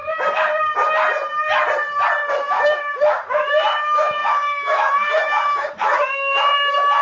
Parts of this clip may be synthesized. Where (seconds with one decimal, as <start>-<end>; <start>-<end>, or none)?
2.3-7.0